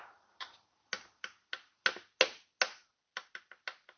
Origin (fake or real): real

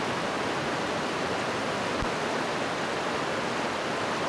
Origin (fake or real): real